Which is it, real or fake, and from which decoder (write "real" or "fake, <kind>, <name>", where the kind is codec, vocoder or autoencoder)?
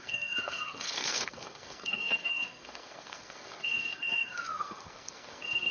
fake, codec, SNAC